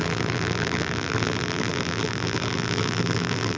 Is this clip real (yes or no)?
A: no